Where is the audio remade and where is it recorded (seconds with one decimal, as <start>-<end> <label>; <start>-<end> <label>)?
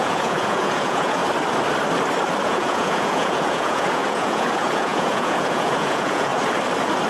0.0-1.2 remade; 1.2-2.4 recorded; 2.4-6.3 remade; 6.3-7.1 recorded